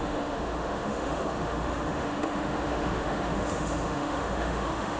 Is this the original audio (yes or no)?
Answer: no